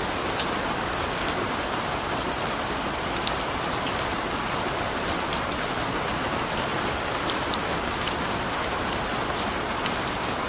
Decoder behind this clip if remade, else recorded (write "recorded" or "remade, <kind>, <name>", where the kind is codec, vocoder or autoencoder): recorded